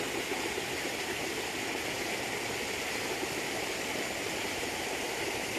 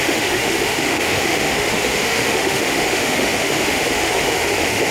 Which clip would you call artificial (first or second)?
second